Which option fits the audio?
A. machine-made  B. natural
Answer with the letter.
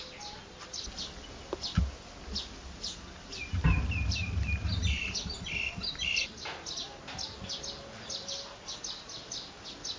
B